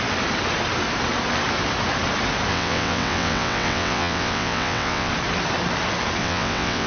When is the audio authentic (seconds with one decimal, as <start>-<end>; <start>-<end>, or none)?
0.0-2.5; 5.1-6.2